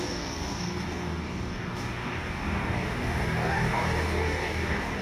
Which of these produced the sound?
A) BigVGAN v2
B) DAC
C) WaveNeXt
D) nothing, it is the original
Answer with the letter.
B